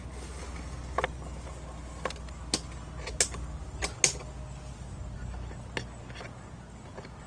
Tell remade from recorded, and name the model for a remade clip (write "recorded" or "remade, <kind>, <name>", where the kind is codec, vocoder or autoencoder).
recorded